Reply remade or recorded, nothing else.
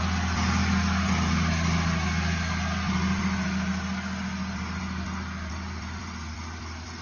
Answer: recorded